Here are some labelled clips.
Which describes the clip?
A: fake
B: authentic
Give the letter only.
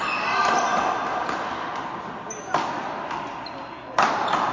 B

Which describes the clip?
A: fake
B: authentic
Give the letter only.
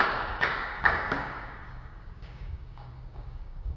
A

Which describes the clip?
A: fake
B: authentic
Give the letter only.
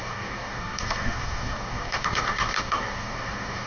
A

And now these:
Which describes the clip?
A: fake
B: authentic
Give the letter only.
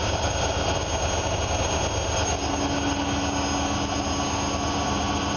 B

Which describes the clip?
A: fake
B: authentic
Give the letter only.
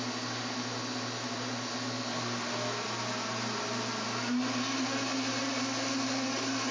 B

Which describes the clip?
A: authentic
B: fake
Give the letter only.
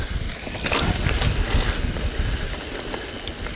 A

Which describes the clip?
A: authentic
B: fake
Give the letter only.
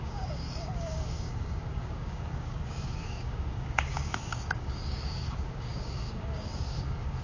B